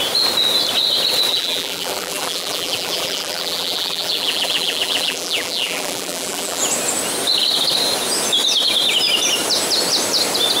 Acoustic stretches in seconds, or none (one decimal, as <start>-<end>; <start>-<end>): 0.0-1.3; 6.6-10.6